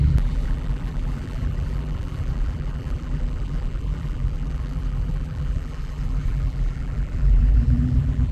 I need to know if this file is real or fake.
fake